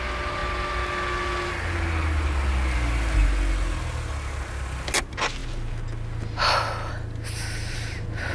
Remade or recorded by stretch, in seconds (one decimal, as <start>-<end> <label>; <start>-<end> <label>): 0.0-8.3 recorded